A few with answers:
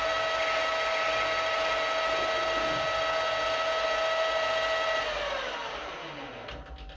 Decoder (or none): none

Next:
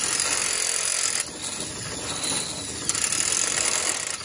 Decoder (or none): none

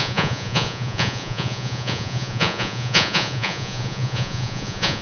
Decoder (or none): vocoder, Vocos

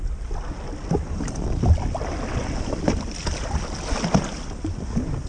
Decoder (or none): none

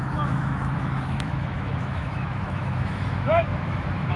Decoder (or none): autoencoder, DAC-VAE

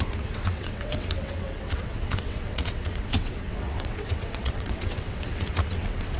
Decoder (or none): vocoder, WaveNeXt